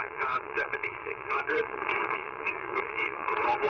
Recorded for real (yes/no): no